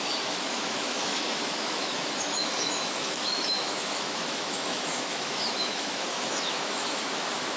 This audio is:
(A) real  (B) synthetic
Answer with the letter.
B